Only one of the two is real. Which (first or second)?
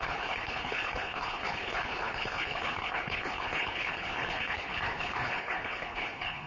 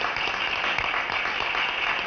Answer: second